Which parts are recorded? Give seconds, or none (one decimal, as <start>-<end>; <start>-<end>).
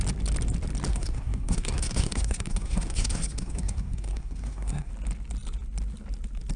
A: 0.0-0.9; 4.9-6.6